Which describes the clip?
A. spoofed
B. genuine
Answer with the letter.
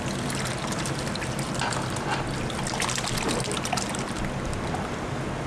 B